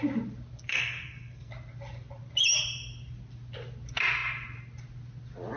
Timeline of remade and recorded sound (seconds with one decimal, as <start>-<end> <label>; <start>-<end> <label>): 0.0-0.7 recorded; 0.7-1.5 remade; 1.5-5.6 recorded